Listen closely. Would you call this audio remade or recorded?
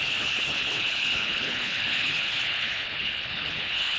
remade